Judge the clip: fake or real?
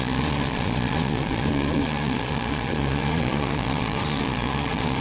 fake